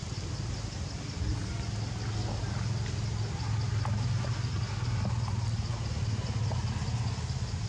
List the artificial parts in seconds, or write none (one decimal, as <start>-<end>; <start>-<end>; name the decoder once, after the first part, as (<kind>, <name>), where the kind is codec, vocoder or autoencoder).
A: none